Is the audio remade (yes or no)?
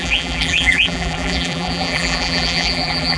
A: yes